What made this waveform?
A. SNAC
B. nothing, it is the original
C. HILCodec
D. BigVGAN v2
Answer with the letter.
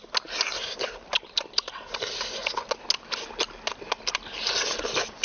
B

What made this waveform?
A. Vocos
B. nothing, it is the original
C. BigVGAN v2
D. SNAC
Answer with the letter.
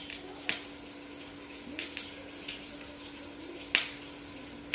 B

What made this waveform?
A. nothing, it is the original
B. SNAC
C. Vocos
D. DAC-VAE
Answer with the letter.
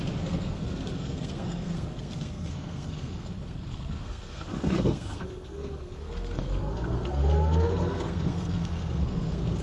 B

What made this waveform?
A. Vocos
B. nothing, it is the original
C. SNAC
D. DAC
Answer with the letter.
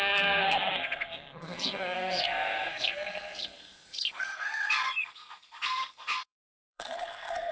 C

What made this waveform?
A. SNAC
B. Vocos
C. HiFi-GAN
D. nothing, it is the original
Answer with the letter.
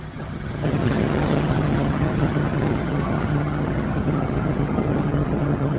C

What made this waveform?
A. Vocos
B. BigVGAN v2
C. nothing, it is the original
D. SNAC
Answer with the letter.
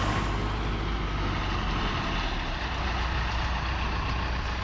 C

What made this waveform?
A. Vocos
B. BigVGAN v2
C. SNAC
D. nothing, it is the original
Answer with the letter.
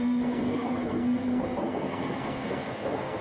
C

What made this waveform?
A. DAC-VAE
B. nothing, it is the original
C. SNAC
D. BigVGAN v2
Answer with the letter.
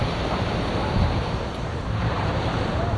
D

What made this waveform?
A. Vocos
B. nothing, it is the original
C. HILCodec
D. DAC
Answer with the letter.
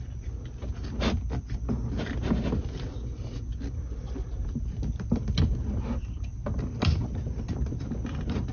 B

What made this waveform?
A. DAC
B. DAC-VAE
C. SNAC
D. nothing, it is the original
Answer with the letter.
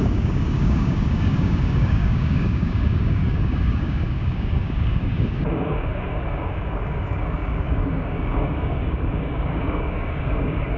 A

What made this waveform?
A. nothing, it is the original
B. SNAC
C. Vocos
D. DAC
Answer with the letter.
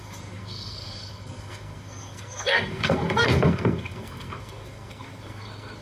B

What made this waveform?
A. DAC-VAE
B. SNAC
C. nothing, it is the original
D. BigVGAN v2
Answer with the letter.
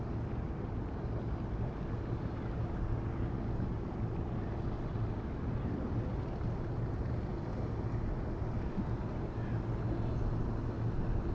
C